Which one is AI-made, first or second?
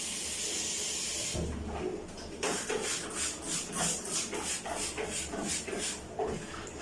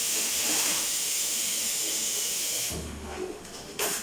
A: second